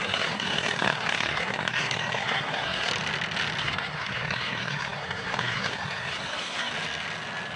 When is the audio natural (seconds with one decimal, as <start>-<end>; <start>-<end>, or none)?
2.9-3.6; 6.7-7.6